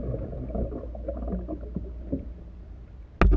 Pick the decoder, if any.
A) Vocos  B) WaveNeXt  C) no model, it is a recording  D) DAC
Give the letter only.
C